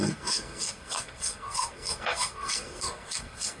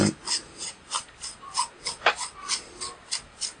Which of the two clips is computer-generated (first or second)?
first